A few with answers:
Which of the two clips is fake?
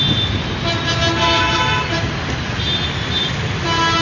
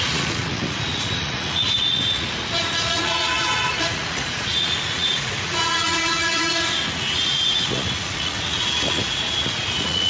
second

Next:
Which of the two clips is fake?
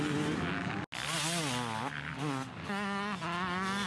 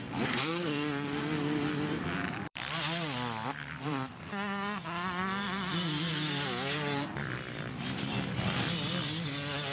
second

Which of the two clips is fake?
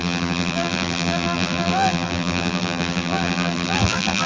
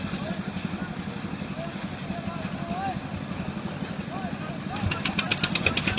first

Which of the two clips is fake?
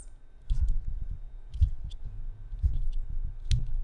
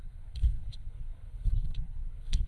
second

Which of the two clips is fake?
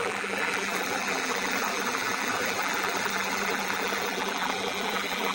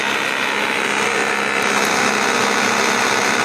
first